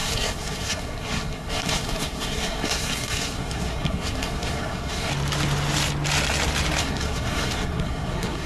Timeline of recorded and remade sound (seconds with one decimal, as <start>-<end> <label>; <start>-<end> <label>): 0.0-5.1 remade; 5.1-6.8 recorded; 6.8-8.5 remade